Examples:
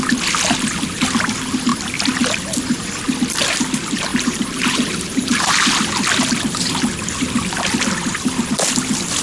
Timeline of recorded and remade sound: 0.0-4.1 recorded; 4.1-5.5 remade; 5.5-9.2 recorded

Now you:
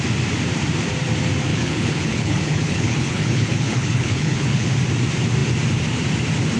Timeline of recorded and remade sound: 0.0-1.5 recorded; 1.5-4.7 remade; 4.7-6.6 recorded

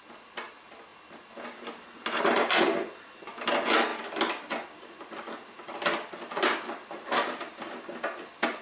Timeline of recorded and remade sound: 0.0-3.9 recorded; 3.9-7.8 remade; 7.8-8.6 recorded

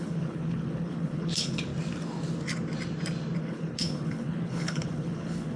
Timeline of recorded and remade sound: 0.0-1.7 remade; 1.7-3.4 recorded; 3.4-5.6 remade

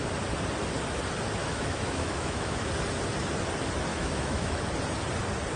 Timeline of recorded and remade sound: 0.0-1.4 recorded; 1.4-2.7 remade; 2.7-3.9 recorded; 3.9-4.6 remade; 4.6-5.6 recorded

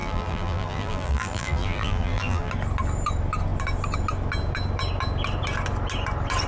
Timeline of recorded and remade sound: 0.0-2.5 remade; 2.5-6.5 recorded

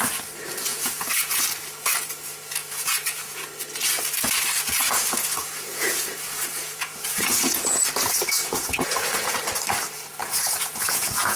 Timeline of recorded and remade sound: 0.0-0.7 recorded; 0.7-1.4 remade; 1.4-2.6 recorded; 2.6-3.4 remade; 3.4-4.8 recorded; 4.8-9.4 remade; 9.4-10.2 recorded; 10.2-11.4 remade